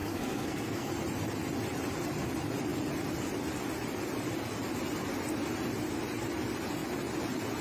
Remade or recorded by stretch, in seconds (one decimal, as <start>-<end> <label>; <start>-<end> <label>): 0.0-0.9 remade; 0.9-7.6 recorded